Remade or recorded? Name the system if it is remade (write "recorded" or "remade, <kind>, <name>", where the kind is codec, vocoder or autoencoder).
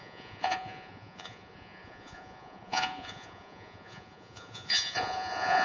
remade, vocoder, Vocos